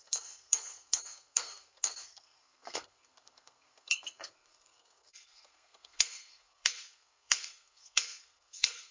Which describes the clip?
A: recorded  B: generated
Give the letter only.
B